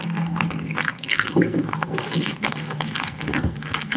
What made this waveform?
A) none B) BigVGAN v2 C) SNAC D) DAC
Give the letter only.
C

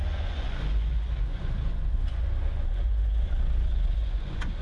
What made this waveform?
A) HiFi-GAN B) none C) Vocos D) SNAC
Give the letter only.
C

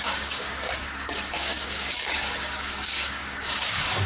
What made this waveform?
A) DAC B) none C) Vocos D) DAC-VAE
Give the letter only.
A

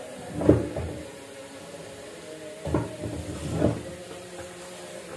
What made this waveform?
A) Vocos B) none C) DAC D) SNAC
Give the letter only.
B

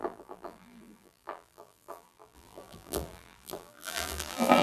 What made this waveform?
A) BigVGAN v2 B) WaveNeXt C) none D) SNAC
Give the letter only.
A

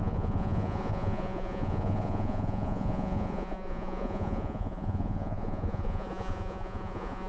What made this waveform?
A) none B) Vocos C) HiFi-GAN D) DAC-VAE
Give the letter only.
B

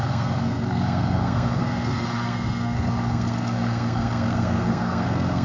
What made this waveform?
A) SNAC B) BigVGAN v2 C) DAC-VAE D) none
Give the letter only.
A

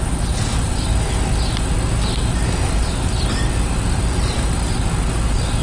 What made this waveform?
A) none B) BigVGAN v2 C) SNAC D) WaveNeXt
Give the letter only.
A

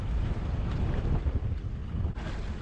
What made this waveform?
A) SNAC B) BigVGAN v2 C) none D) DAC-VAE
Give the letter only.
C